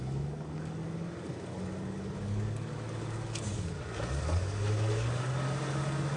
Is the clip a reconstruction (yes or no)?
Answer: yes